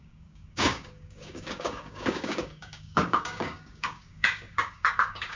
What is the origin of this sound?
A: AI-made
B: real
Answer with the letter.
A